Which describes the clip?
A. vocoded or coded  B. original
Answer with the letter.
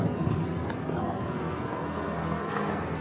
A